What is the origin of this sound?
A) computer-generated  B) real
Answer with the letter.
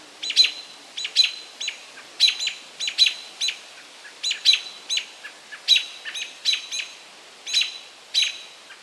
B